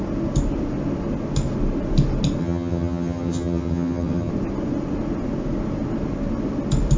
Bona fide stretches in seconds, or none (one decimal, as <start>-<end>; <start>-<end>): 0.0-2.4; 4.3-7.0